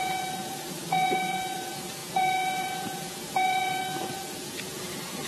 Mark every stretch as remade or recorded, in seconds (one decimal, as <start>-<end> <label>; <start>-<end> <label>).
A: 0.0-5.3 remade